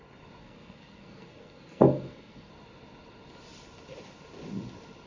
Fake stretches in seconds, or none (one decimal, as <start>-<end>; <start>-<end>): 0.4-2.5